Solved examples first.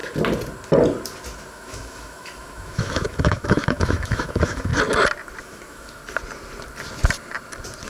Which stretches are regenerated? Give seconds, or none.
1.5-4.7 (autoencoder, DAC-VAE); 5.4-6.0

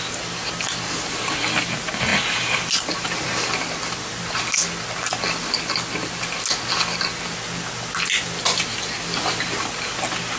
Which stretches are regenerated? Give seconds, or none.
none

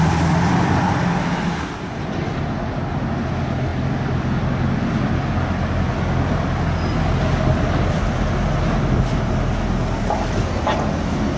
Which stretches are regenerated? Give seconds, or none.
none

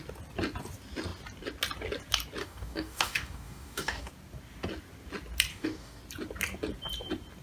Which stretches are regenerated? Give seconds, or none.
2.4-4.1 (codec, DAC); 5.5-6.0